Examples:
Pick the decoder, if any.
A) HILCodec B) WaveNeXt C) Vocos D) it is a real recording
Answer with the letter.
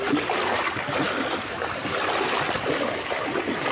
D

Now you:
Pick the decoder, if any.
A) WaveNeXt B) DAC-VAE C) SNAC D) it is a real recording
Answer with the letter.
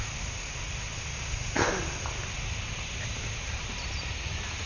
D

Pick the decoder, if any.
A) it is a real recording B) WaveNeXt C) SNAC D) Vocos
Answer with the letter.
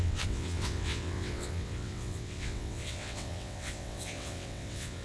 B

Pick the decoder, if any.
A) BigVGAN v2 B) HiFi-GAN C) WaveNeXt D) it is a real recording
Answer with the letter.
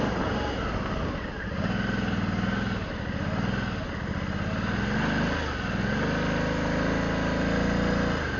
D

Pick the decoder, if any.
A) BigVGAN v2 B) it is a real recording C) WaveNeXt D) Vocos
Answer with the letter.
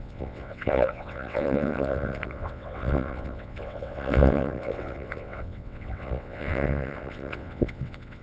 C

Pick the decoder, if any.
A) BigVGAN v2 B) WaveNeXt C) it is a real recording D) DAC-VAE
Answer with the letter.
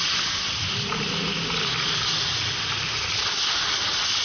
C